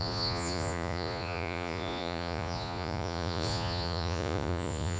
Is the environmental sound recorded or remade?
remade